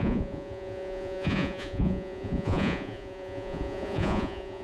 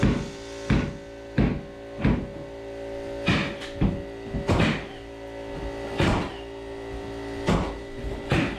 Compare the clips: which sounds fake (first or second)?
first